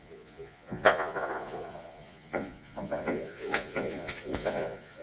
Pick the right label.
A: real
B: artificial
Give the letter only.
B